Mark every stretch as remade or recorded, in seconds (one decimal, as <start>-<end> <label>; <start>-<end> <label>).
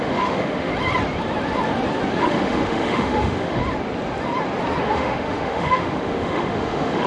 0.0-0.7 remade; 0.7-2.2 recorded; 2.2-3.6 remade; 3.6-4.8 recorded; 4.8-7.1 remade